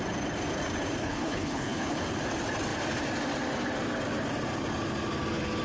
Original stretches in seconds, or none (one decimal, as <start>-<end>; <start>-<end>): 0.0-1.0; 2.0-5.6